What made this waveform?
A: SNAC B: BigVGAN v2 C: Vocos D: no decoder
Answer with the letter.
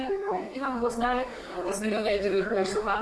A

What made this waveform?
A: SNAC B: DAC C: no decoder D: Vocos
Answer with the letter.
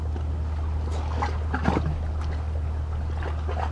C